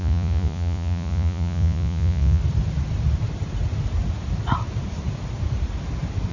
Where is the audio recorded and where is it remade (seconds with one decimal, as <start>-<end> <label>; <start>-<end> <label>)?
0.0-2.4 remade; 2.4-6.3 recorded